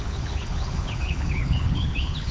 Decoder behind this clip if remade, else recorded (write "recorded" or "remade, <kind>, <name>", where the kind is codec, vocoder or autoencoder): remade, codec, HILCodec